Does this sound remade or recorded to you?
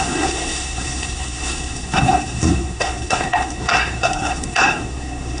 remade